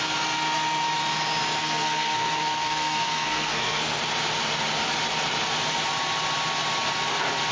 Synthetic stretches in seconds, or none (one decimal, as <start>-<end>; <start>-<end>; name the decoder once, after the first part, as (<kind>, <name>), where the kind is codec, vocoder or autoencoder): 1.6-4.0 (codec, SNAC)